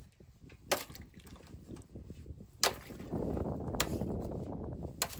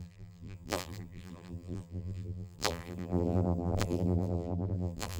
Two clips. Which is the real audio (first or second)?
first